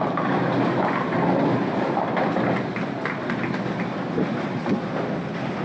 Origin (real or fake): real